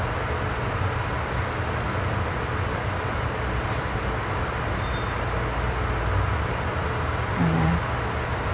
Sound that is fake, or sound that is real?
real